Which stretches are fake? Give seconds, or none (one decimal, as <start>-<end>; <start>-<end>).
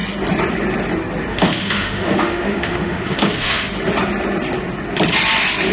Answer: 1.3-3.7